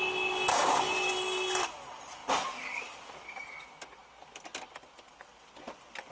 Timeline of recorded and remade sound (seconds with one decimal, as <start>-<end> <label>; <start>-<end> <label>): 0.0-0.5 recorded; 0.5-1.1 remade; 1.1-6.1 recorded